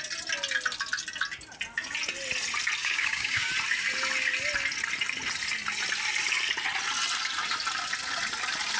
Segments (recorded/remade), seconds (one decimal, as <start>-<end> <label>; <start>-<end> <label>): 0.0-2.8 recorded; 2.8-3.5 remade; 3.5-8.8 recorded